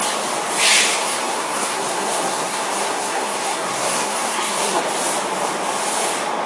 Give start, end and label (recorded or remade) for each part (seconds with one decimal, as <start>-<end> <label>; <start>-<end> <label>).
0.0-0.9 recorded; 0.9-4.8 remade; 4.8-6.5 recorded

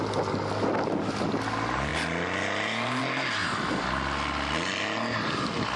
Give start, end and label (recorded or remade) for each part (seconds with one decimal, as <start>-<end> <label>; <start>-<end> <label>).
0.0-5.8 recorded

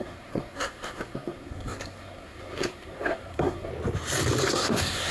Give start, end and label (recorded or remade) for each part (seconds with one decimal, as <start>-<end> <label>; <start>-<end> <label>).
0.0-3.7 remade; 3.7-4.5 recorded; 4.5-5.1 remade

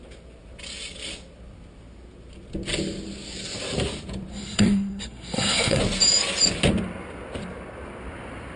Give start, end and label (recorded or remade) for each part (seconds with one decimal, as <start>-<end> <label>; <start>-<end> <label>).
0.0-4.3 recorded; 4.3-5.8 remade; 5.8-8.6 recorded

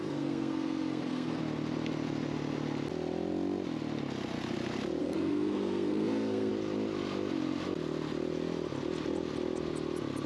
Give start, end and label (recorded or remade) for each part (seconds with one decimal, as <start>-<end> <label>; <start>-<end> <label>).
0.0-1.4 remade; 1.4-5.0 recorded; 5.0-6.5 remade; 6.5-10.3 recorded

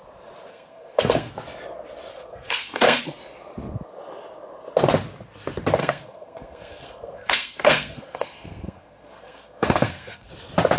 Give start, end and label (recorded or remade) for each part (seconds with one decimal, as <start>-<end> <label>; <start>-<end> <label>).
0.0-0.5 recorded; 0.5-1.3 remade; 1.3-2.1 recorded; 2.1-3.0 remade; 3.0-5.8 recorded; 5.8-10.3 remade; 10.3-10.8 recorded